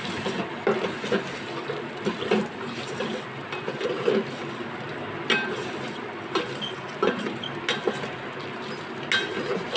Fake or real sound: real